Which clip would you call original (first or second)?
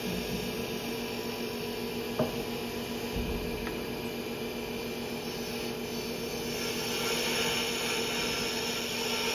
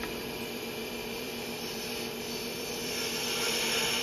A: first